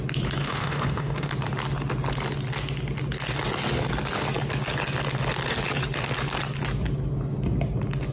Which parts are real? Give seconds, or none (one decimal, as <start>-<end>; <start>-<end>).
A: 0.0-0.4; 1.3-8.1